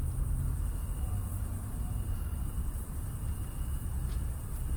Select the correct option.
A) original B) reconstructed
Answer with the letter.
B